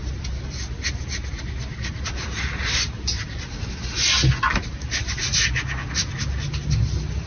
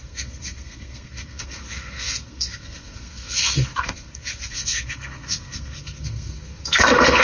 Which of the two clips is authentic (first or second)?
first